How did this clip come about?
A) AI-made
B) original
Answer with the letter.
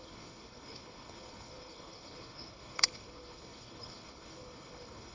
A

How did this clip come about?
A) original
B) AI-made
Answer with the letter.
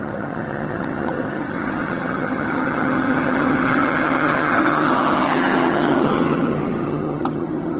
B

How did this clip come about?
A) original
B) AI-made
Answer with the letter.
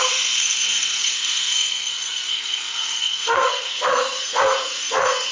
B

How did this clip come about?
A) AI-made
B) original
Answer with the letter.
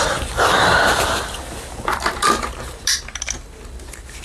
B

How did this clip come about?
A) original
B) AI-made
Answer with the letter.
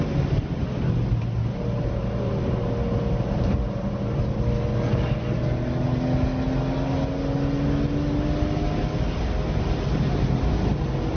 A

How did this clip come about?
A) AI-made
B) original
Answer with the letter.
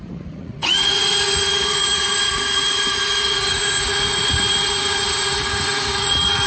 A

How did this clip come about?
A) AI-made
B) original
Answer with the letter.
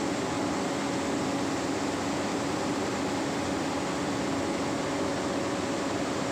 B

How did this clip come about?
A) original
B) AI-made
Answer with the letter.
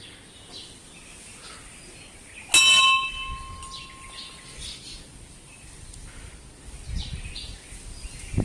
A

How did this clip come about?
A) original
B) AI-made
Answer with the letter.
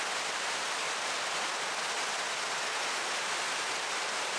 A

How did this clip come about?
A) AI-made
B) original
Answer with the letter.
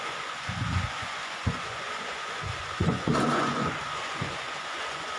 A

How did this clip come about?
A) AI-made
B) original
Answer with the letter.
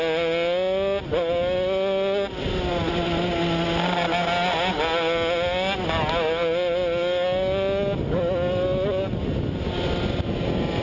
B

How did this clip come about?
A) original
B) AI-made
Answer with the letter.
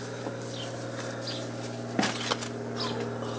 A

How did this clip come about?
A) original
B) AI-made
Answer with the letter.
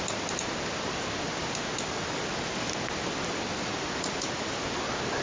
A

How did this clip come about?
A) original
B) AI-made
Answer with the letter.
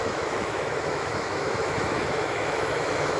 B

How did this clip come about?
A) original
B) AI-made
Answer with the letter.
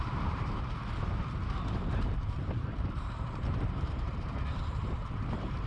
B